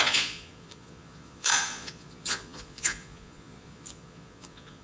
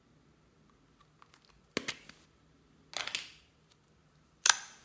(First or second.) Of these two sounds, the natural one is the second